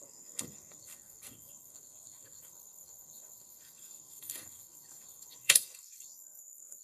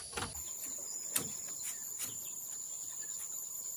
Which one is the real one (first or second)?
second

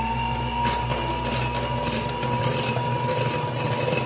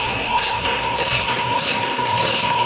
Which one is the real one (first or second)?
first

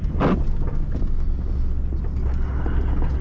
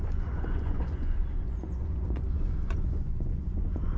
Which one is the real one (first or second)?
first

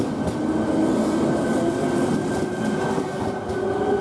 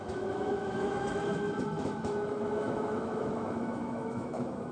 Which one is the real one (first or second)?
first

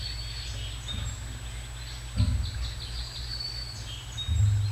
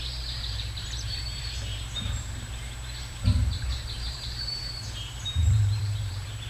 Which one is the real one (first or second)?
first